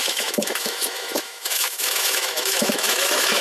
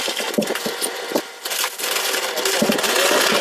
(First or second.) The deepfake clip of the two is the first